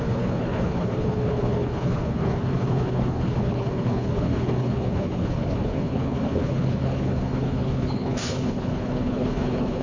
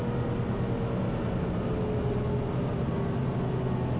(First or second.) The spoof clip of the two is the first